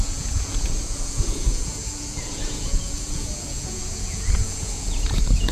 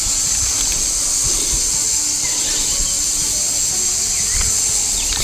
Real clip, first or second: second